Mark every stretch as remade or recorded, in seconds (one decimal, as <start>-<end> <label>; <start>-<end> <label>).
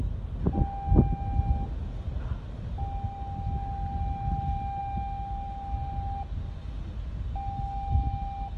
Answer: 0.0-8.6 recorded